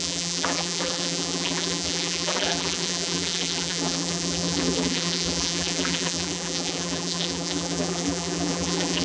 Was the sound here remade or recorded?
remade